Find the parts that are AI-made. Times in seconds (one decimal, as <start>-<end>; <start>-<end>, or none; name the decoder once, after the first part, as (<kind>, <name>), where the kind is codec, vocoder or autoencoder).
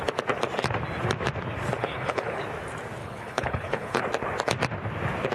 1.8-2.4 (codec, HILCodec); 3.0-4.0